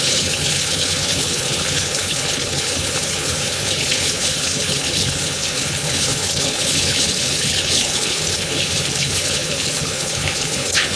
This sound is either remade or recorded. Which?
remade